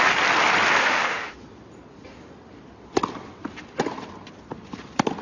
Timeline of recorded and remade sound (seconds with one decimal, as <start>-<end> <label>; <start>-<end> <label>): 0.0-0.8 recorded; 0.8-1.4 remade; 1.4-5.2 recorded